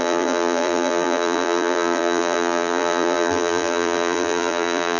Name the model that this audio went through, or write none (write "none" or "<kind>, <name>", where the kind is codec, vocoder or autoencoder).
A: vocoder, BigVGAN v2